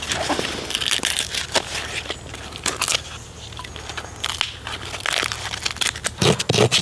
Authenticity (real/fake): real